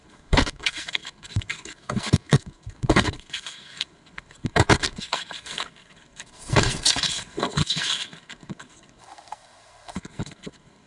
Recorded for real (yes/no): no